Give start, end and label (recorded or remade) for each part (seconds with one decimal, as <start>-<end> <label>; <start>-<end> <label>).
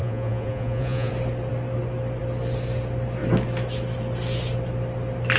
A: 0.0-1.1 remade; 1.1-5.4 recorded